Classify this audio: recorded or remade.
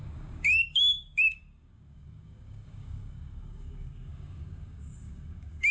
remade